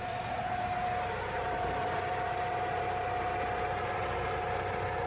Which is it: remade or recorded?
recorded